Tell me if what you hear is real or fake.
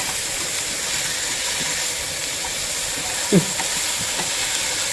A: real